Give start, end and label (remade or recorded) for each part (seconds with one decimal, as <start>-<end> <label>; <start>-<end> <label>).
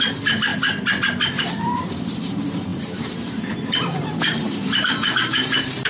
0.0-0.5 remade; 0.5-1.4 recorded; 1.4-5.9 remade